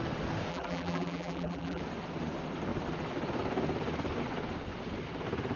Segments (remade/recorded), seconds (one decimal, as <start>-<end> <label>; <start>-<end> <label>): 0.0-0.5 recorded; 0.5-1.8 remade; 1.8-5.6 recorded